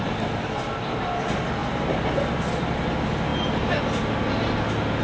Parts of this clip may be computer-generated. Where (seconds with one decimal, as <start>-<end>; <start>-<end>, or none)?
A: none